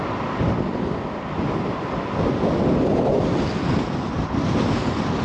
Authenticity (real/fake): real